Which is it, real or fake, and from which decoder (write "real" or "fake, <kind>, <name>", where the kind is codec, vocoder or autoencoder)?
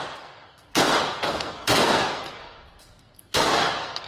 fake, codec, SNAC